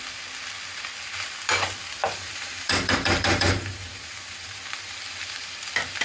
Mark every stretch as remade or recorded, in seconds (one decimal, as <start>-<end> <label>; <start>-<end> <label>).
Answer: 0.0-2.0 recorded; 2.0-5.6 remade; 5.6-6.0 recorded